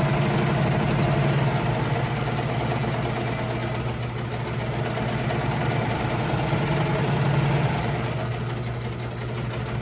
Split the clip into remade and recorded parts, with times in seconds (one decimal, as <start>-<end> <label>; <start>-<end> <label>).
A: 0.0-9.8 recorded